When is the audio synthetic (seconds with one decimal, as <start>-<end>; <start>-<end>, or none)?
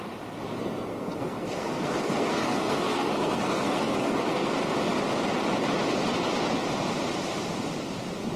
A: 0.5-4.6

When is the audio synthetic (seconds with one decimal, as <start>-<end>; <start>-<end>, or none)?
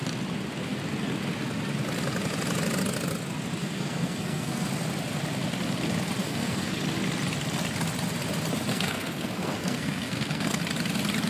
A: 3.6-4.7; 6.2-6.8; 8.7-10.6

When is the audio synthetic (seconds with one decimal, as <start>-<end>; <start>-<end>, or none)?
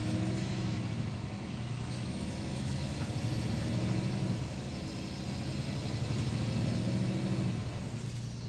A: 0.0-3.1; 4.2-4.8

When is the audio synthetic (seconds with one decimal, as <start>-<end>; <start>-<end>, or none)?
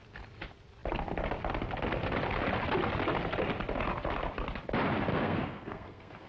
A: 5.1-6.3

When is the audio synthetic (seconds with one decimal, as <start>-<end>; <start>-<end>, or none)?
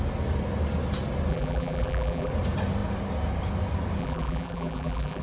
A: 1.3-2.3; 4.0-5.2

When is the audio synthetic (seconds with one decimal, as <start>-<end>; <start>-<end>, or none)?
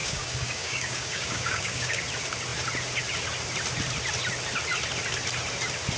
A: 0.0-2.0